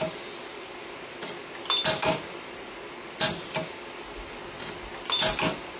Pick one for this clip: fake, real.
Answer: real